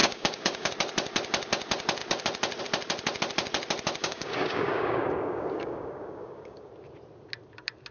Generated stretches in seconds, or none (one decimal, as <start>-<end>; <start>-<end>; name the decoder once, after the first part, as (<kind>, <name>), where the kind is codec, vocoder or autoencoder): 0.0-0.7 (codec, DAC); 4.0-6.7